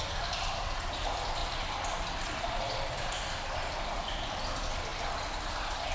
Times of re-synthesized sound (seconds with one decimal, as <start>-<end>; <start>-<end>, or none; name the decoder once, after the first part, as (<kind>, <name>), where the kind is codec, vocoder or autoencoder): none